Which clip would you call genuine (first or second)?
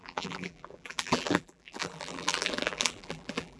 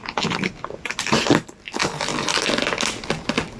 second